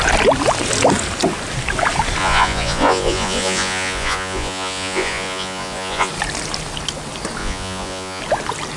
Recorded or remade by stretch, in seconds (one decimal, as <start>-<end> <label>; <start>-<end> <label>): 0.0-2.2 recorded; 2.2-6.1 remade; 6.1-7.4 recorded; 7.4-8.2 remade; 8.2-8.8 recorded

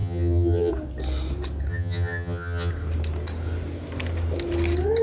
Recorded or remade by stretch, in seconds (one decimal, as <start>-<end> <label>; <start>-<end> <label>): 0.0-0.7 remade; 0.7-1.7 recorded; 1.7-2.7 remade; 2.7-5.0 recorded

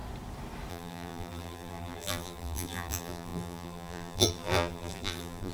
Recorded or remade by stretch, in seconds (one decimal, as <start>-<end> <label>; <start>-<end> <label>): 0.0-0.7 recorded; 0.7-5.5 remade

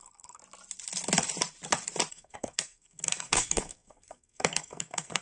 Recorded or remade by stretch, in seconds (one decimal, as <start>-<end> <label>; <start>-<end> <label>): 0.0-0.4 remade; 0.4-2.1 recorded; 2.1-5.2 remade

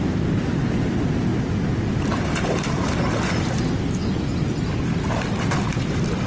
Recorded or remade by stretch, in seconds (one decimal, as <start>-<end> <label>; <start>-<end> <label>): 0.0-6.3 recorded

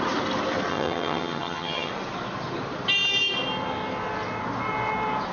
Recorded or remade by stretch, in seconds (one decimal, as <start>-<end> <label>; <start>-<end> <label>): 0.0-0.7 recorded; 0.7-1.9 remade; 1.9-5.3 recorded